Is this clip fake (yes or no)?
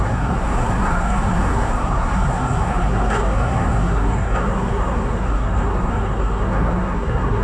yes